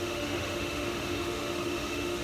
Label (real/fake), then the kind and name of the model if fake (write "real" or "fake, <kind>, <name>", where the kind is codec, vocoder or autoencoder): fake, autoencoder, DAC-VAE